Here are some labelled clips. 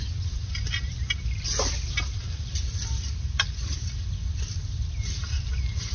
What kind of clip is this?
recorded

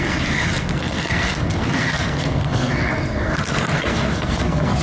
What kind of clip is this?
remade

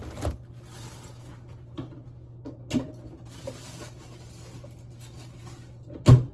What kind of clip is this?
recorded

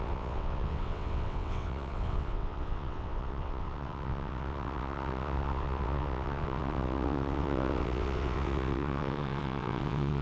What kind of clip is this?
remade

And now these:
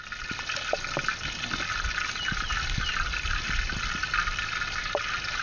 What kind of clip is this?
recorded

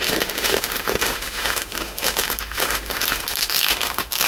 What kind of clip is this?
remade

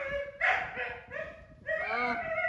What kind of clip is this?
recorded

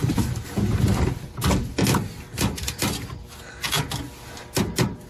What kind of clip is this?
recorded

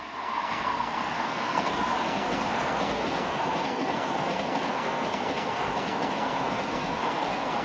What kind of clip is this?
remade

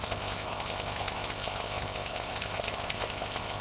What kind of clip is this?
remade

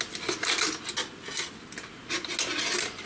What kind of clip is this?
recorded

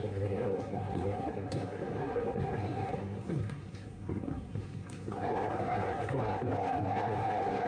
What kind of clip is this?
remade